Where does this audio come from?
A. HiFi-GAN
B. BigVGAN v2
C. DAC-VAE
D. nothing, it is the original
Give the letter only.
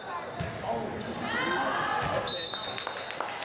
D